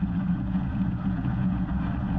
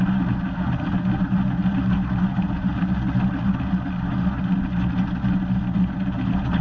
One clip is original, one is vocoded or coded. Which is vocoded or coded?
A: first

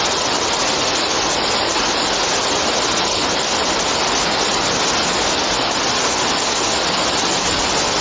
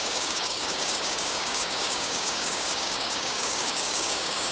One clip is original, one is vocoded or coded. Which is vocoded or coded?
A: second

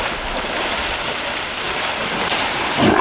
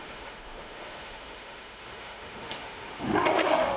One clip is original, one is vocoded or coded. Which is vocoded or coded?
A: second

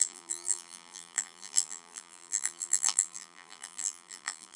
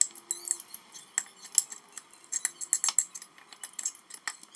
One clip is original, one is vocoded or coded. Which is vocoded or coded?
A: first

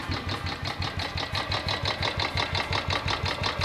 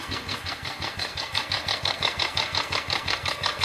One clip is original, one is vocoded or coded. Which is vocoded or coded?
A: second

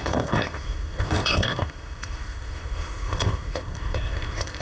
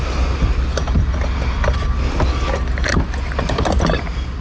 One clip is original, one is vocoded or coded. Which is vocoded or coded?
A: first